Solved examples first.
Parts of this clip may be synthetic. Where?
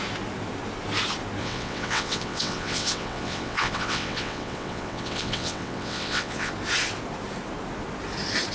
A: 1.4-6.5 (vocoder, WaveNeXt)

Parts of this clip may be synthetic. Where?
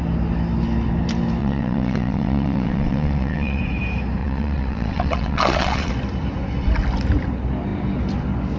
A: 1.4-3.6 (vocoder, WaveNeXt); 4.2-5.9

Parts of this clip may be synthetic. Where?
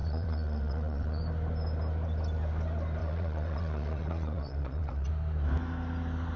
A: 0.0-1.2 (vocoder, WaveNeXt); 3.0-5.1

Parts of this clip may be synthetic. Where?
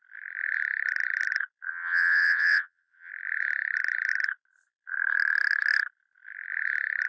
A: 1.7-3.1 (vocoder, WaveNeXt)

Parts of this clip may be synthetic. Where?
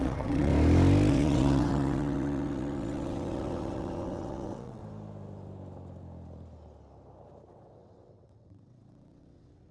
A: 0.0-0.5 (vocoder, WaveNeXt); 1.1-4.8; 7.5-9.7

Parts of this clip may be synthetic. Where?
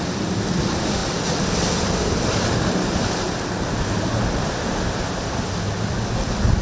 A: none